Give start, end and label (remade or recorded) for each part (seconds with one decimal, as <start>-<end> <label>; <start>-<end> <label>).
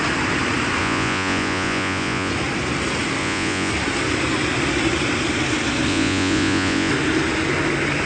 0.0-0.8 recorded; 0.8-2.3 remade; 2.3-3.2 recorded; 3.2-3.7 remade; 3.7-5.9 recorded; 5.9-6.9 remade; 6.9-8.1 recorded